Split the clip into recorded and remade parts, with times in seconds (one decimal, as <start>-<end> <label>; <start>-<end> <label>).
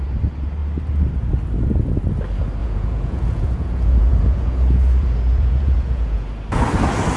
0.0-2.6 recorded; 2.6-6.3 remade; 6.3-7.2 recorded